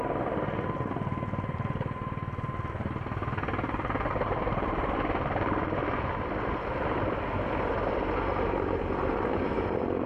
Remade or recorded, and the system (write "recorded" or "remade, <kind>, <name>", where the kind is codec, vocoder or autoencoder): remade, vocoder, BigVGAN v2